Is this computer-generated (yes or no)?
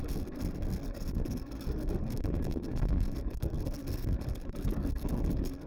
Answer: yes